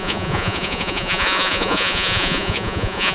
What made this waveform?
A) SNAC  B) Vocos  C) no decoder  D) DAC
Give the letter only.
B